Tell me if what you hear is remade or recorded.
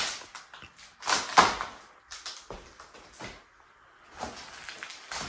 recorded